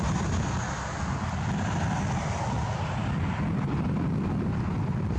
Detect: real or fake real